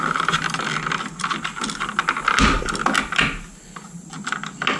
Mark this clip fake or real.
real